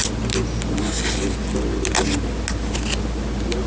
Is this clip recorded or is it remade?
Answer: recorded